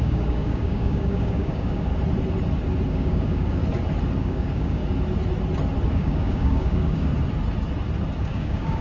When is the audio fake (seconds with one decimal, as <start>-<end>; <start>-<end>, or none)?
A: 0.0-1.9; 2.9-3.6; 4.2-4.8; 5.9-7.1; 8.2-8.8